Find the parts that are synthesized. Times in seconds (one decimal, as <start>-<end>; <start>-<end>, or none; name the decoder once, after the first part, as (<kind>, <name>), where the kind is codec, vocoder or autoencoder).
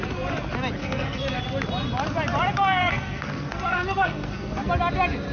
0.8-1.4 (codec, SNAC); 2.8-4.7